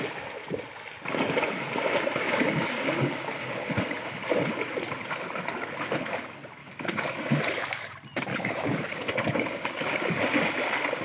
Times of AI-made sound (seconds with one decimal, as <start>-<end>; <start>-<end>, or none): 2.2-3.8; 6.6-7.4; 8.3-10.2